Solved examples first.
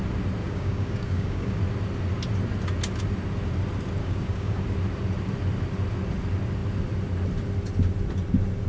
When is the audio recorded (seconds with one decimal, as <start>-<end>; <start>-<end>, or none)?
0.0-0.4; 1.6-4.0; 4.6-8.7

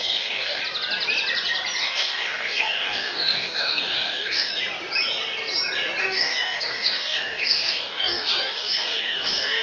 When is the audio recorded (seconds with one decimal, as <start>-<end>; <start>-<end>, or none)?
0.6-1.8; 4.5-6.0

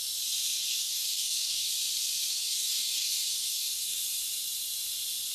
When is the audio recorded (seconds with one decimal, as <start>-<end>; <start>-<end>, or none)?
0.0-0.7; 1.7-2.3; 4.0-5.3

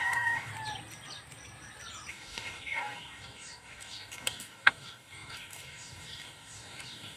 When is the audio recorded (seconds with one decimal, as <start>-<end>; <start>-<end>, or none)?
0.5-2.1